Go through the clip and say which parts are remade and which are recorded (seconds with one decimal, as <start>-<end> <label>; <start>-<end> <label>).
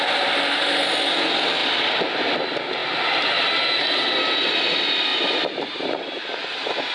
0.0-2.8 recorded; 2.8-3.5 remade; 3.5-5.1 recorded; 5.1-6.9 remade